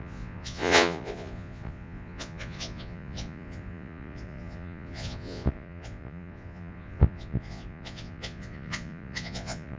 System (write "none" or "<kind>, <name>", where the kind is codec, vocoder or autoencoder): vocoder, Vocos